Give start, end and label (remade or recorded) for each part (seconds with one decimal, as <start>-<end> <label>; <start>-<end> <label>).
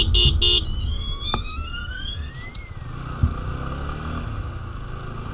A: 0.0-0.8 recorded; 0.8-2.3 remade; 2.3-5.3 recorded